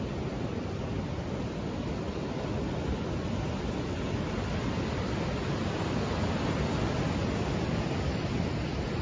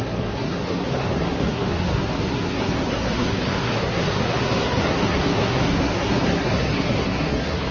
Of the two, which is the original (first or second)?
first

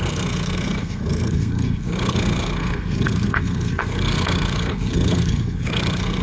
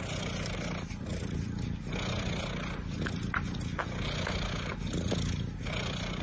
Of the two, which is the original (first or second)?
second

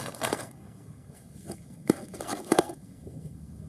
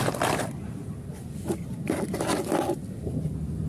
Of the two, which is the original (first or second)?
second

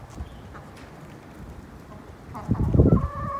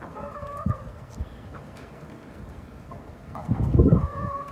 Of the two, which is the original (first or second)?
first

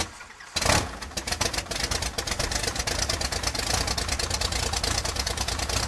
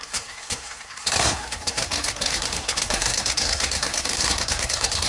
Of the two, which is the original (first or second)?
first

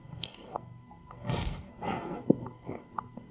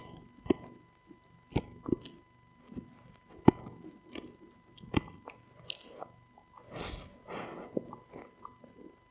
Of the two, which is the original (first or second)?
second